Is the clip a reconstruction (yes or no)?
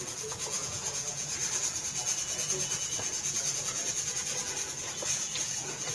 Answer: yes